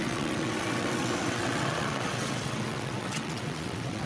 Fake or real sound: fake